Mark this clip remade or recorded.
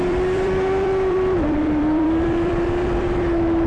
remade